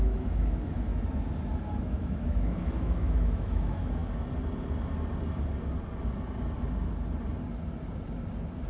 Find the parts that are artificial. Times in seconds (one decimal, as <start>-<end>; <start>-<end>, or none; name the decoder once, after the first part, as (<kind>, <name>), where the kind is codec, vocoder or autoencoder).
0.0-0.9 (autoencoder, DAC-VAE); 1.8-4.0